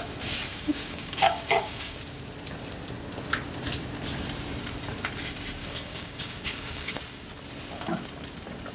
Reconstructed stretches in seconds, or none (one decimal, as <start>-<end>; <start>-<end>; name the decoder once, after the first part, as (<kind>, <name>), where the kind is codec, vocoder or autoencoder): 0.5-2.0 (codec, DAC); 5.6-6.9